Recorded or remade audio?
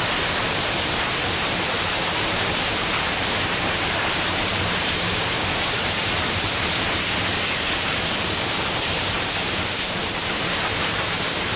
remade